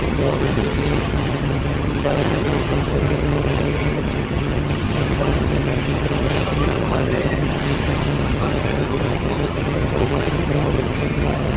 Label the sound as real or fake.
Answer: fake